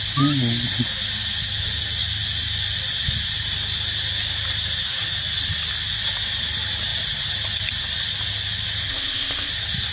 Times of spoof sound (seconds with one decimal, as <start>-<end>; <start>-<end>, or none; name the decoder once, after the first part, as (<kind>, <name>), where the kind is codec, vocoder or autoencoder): 8.9-9.5 (codec, ZipCodec)